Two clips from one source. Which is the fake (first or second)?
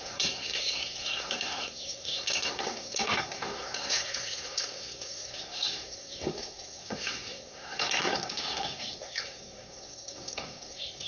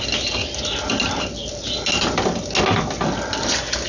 first